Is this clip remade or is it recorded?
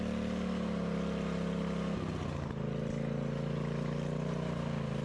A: recorded